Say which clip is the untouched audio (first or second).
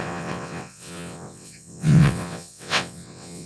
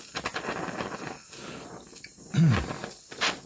second